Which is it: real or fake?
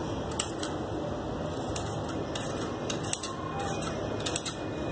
real